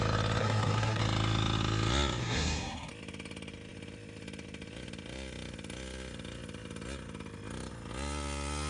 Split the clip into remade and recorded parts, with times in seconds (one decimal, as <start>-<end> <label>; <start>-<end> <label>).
0.0-0.4 recorded; 0.4-1.0 remade; 1.0-2.2 recorded; 2.2-2.9 remade; 2.9-8.7 recorded